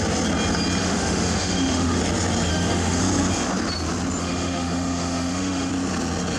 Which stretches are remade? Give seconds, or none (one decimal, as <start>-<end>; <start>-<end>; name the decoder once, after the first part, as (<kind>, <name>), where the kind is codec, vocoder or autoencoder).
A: 0.8-2.0 (autoencoder, DAC-VAE); 2.5-3.0; 4.2-5.7